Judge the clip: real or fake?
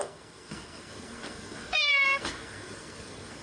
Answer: fake